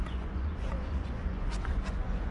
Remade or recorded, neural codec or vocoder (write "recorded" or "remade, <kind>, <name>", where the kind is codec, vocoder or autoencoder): remade, vocoder, Vocos